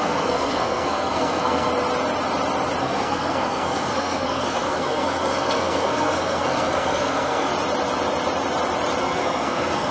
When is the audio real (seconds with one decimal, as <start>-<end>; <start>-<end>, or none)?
1.7-2.8; 7.5-9.0